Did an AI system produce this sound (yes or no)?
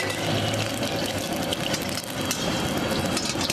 no